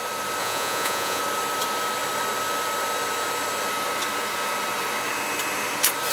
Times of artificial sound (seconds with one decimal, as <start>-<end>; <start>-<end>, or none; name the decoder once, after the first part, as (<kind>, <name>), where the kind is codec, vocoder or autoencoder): 0.4-1.2 (vocoder, Vocos)